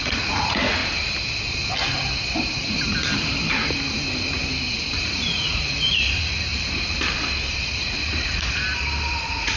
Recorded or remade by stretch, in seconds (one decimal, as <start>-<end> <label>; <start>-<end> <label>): 0.0-0.8 remade; 0.8-5.0 recorded; 5.0-6.5 remade; 6.5-7.6 recorded; 7.6-8.6 remade; 8.6-9.2 recorded; 9.2-9.6 remade